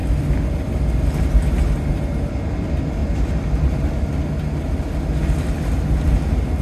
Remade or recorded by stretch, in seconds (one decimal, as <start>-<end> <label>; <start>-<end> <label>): 0.0-6.6 recorded